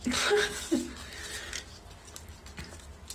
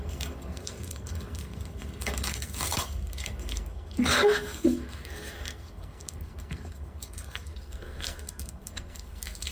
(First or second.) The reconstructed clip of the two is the second